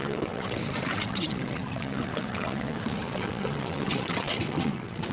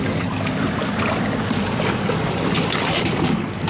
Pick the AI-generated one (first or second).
first